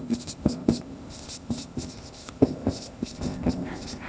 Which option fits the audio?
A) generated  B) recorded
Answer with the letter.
A